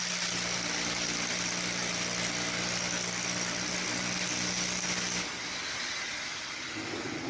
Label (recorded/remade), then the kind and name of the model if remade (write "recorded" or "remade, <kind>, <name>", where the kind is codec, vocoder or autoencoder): recorded